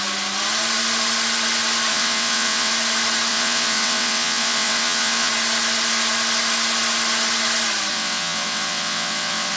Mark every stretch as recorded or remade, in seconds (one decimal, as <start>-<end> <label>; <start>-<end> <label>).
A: 0.0-1.9 recorded; 1.9-2.7 remade; 2.7-3.3 recorded; 3.3-5.3 remade; 5.3-7.9 recorded; 7.9-9.6 remade